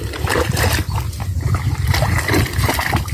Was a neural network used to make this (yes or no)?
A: no